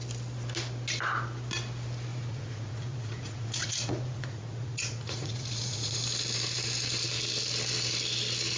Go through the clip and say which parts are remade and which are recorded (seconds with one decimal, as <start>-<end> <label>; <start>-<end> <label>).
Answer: 0.0-2.1 recorded; 2.1-6.0 remade; 6.0-8.6 recorded